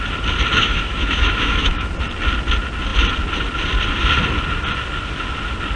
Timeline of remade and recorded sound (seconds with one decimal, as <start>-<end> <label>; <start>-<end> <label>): 0.0-0.5 recorded; 0.5-1.9 remade; 1.9-5.8 recorded